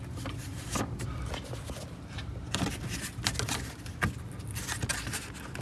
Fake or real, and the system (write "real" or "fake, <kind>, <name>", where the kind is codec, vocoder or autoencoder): real